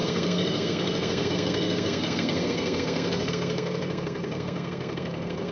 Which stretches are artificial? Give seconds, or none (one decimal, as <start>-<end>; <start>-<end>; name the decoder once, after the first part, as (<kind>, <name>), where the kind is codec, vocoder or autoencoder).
0.0-5.5 (codec, SNAC)